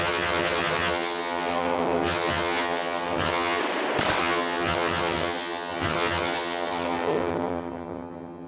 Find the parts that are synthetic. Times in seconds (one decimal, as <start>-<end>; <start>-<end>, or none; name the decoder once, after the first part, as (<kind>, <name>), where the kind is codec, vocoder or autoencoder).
0.0-3.6 (vocoder, HiFi-GAN); 4.2-8.5